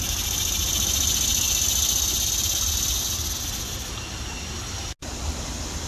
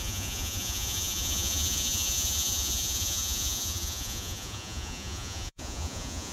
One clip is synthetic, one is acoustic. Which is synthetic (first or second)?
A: second